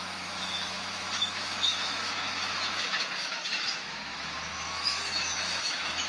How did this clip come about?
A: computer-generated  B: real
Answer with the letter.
A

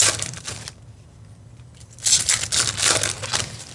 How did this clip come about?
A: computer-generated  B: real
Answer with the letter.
B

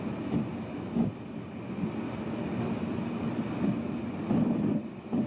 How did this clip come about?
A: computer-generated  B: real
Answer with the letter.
B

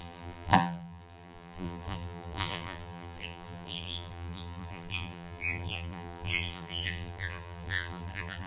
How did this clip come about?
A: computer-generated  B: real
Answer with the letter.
A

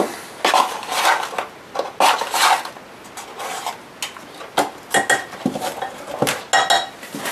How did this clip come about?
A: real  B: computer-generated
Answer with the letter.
A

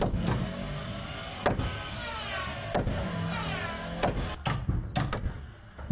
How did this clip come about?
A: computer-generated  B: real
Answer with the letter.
B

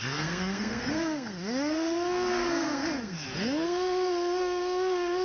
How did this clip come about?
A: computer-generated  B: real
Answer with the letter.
A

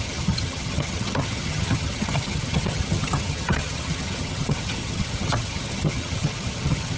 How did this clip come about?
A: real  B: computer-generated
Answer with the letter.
B